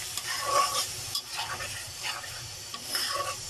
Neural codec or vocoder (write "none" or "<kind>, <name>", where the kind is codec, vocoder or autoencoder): vocoder, BigVGAN v2